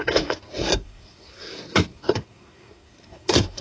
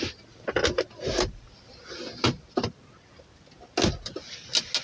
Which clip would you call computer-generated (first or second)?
first